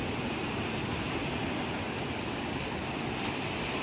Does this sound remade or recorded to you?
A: recorded